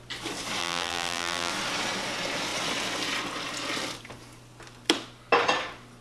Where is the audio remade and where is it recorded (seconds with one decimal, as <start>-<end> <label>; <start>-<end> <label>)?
0.0-0.6 recorded; 0.6-1.5 remade; 1.5-6.0 recorded